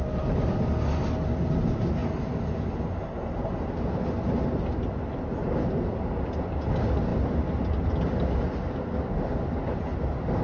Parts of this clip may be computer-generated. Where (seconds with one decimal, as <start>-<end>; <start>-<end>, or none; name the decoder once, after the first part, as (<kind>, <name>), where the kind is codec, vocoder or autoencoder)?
none